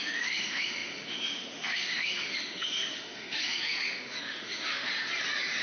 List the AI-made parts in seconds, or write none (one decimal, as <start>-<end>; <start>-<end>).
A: 0.0-4.9